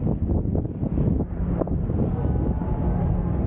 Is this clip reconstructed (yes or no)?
no